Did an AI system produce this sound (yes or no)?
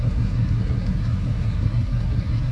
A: yes